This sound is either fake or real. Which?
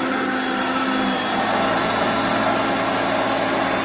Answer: real